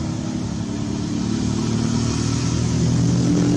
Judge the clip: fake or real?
real